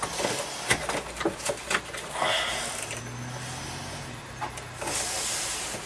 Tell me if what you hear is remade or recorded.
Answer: recorded